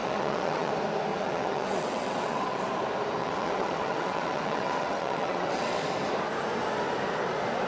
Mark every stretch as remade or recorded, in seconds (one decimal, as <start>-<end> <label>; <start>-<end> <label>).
0.0-0.7 remade; 0.7-1.1 recorded; 1.1-2.6 remade; 2.6-3.2 recorded; 3.2-5.8 remade; 5.8-7.7 recorded